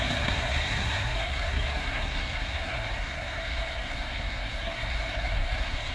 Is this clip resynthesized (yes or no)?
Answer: yes